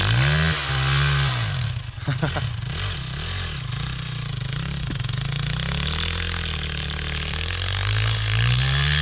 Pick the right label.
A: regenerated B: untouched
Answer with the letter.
B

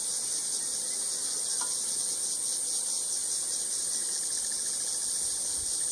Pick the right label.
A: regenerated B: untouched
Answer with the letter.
B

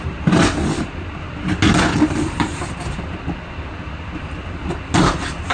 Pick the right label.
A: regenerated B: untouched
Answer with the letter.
B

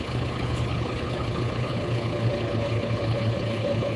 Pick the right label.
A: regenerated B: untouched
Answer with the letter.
A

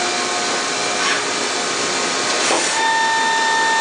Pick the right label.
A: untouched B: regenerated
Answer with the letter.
A